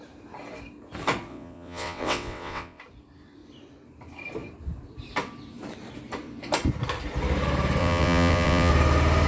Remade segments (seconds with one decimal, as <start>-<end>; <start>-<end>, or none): 1.3-2.8; 7.8-8.7